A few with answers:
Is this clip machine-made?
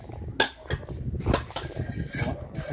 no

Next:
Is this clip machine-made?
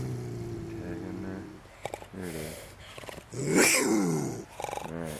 no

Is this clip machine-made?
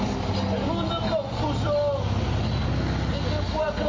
no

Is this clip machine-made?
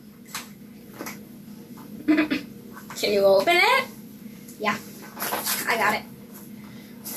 no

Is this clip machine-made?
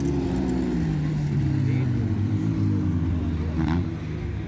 no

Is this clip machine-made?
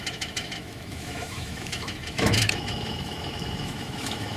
yes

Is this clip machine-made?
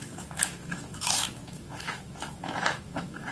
yes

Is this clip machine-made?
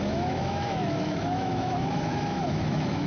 yes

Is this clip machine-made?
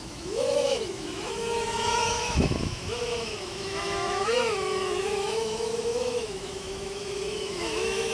yes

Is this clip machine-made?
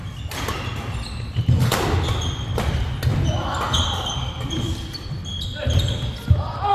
no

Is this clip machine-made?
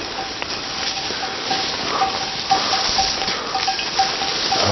no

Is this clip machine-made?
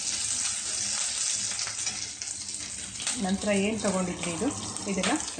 no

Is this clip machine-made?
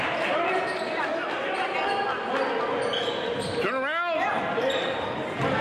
no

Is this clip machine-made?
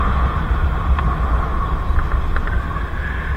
no